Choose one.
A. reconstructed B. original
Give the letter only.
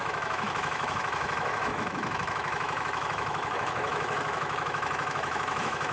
A